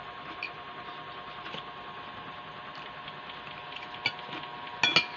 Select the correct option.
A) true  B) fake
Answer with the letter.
A